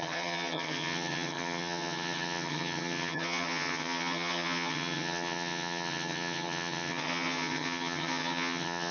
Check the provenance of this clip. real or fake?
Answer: fake